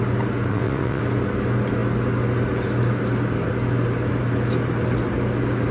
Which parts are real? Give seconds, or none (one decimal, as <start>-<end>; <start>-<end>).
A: 0.0-0.5; 1.0-5.7